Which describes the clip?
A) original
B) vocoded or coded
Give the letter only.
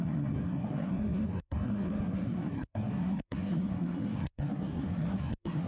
B